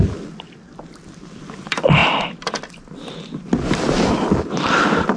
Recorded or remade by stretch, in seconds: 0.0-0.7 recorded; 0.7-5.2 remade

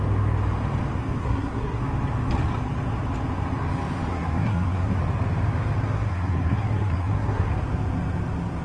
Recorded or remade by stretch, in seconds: 0.0-1.2 recorded; 1.2-1.8 remade; 1.8-4.1 recorded; 4.1-5.0 remade; 5.0-5.8 recorded; 5.8-7.5 remade; 7.5-8.6 recorded

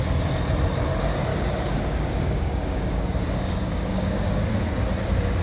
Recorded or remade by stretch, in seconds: 0.0-1.3 recorded; 1.3-4.5 remade; 4.5-5.4 recorded

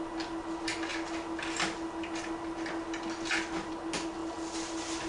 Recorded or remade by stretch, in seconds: 0.0-5.1 recorded